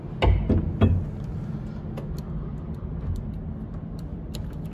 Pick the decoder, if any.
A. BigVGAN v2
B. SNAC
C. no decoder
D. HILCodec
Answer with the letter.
C